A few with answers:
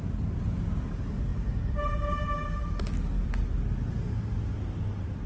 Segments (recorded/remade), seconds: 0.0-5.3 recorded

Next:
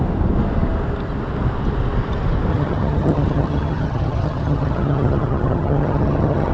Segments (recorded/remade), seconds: 0.0-2.5 recorded; 2.5-6.5 remade